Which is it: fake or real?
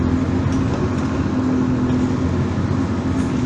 real